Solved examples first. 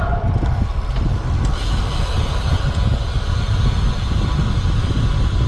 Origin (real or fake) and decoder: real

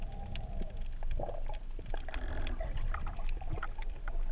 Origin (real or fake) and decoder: real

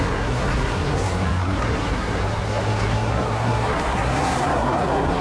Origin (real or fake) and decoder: fake, codec, SNAC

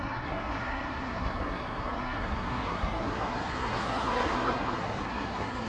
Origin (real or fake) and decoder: fake, codec, SNAC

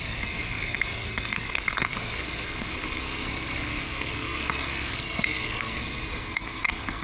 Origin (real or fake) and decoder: fake, codec, SNAC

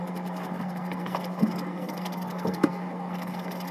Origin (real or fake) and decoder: fake, codec, SNAC